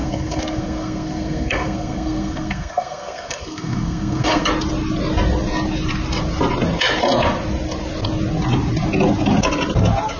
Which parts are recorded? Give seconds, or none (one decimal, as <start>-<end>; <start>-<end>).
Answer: 4.5-10.2

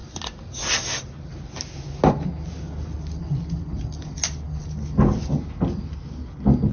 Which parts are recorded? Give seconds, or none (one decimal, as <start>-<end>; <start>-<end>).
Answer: 0.0-6.7

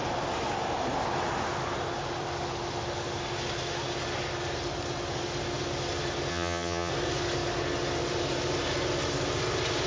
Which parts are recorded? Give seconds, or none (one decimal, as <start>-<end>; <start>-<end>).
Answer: 0.0-6.3; 6.9-9.9

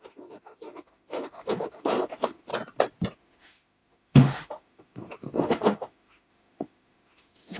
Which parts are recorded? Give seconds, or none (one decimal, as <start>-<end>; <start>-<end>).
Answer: 2.5-3.1

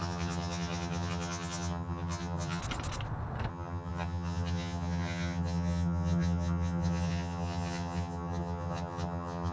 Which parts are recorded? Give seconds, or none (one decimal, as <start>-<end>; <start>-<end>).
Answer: 2.6-3.5

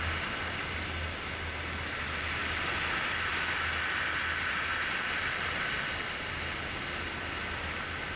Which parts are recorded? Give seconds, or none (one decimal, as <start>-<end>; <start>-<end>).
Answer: 0.0-8.2

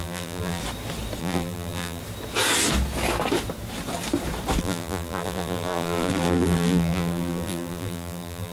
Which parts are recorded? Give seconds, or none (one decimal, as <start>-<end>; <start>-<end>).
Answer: 0.6-1.2; 2.0-4.6

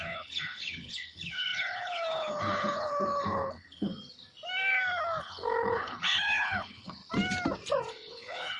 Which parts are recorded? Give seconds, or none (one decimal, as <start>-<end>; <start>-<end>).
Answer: 3.9-5.2; 7.0-7.9